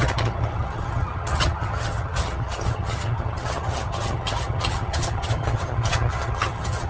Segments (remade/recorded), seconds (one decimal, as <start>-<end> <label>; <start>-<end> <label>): 0.0-6.9 remade